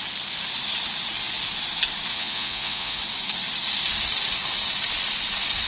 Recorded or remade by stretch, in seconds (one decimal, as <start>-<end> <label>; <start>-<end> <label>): 0.0-2.1 recorded; 2.1-3.0 remade; 3.0-5.7 recorded